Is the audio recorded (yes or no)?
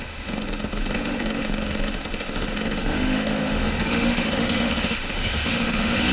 no